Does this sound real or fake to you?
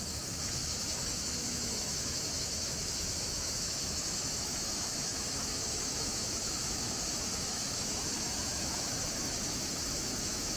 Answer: fake